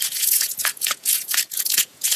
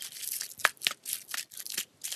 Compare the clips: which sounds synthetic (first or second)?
first